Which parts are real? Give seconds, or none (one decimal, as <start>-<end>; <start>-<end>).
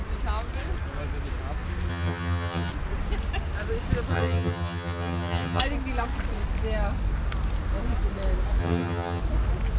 0.0-1.9; 2.7-4.1; 5.6-8.6; 9.2-9.8